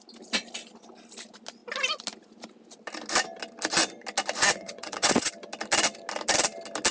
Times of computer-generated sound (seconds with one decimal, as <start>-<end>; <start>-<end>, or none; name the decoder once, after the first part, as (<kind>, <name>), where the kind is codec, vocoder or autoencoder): 4.4-5.3 (vocoder, WaveNeXt)